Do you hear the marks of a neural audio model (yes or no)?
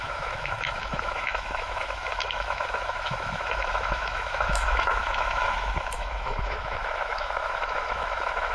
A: yes